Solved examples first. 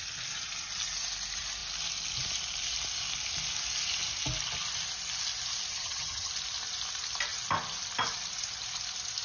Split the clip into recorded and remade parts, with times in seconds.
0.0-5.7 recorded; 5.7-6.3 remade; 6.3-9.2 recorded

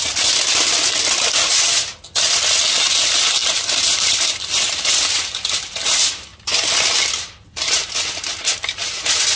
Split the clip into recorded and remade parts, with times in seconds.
0.0-9.4 recorded